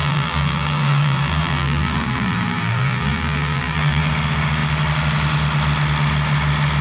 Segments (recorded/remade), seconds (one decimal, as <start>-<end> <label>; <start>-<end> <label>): 0.0-4.1 remade; 4.1-6.8 recorded